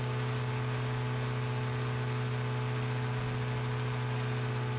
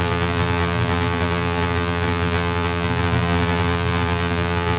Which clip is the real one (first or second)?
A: first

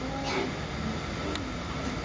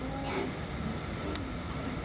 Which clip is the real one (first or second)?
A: first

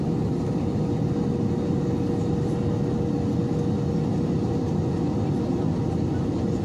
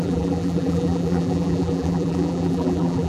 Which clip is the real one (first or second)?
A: first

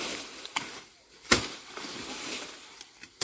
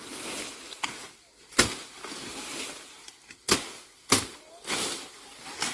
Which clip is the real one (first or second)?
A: second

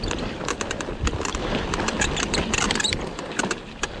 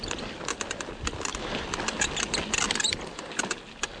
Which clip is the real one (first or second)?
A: second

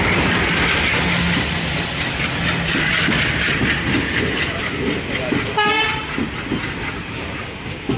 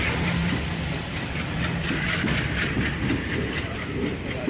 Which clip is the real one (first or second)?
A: first